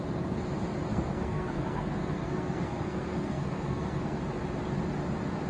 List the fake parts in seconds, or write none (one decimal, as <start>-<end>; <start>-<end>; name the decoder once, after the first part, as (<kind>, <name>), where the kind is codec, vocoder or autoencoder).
0.9-4.2 (codec, SNAC)